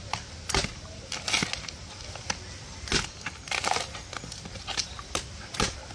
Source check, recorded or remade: recorded